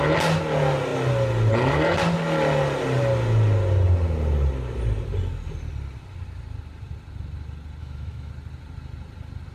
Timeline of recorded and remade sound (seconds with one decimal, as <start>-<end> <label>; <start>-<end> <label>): 0.0-7.8 recorded; 7.8-8.3 remade; 8.3-9.5 recorded